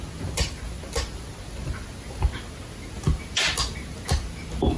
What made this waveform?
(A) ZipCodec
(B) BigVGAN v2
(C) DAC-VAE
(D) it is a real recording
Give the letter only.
D